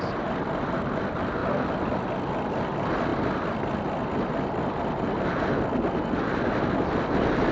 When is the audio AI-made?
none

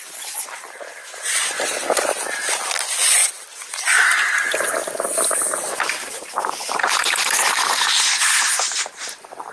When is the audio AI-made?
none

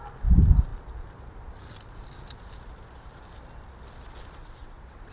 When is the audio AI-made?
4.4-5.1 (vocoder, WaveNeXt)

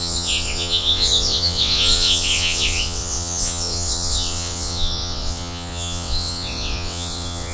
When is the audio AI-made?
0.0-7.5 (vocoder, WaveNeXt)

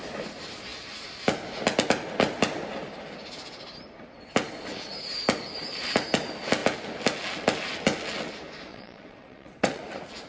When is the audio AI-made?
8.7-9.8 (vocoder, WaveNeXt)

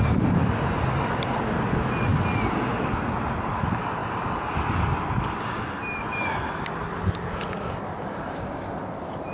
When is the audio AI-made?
none

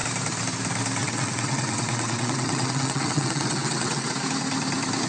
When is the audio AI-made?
1.0-4.1 (vocoder, WaveNeXt)